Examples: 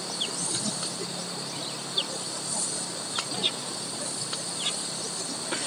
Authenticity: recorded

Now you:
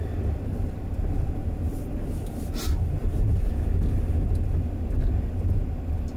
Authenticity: recorded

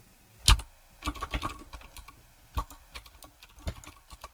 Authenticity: recorded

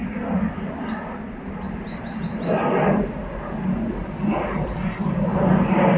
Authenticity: recorded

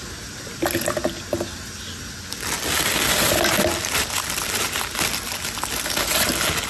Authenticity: recorded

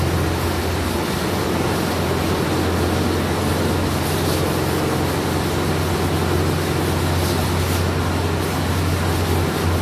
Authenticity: recorded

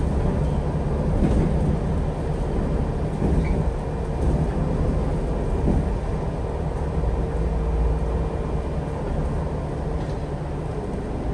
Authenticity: recorded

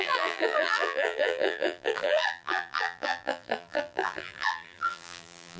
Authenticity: remade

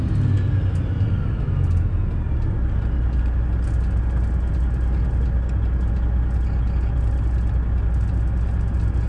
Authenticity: recorded